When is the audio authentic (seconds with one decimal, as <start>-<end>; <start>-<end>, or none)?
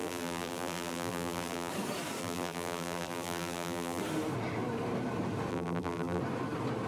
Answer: 1.7-2.2; 4.0-5.5; 6.2-6.9